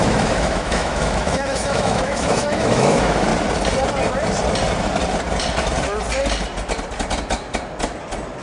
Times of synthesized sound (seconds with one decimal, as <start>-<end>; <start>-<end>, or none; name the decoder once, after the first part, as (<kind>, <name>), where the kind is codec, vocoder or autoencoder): 0.0-3.3 (autoencoder, DAC-VAE)